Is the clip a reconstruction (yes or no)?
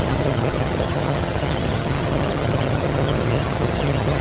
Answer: yes